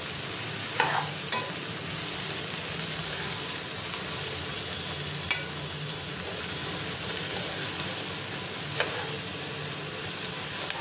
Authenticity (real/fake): real